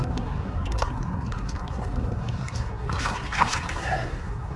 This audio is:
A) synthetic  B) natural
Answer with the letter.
A